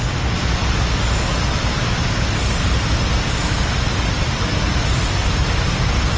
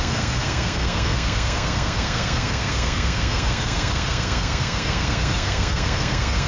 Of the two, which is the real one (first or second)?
first